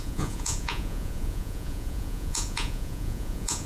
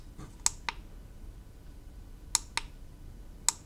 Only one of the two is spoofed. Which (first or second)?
first